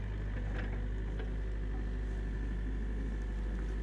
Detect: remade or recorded recorded